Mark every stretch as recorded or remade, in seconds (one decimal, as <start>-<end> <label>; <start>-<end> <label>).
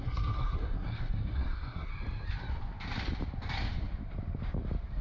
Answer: 0.0-1.9 remade; 1.9-5.0 recorded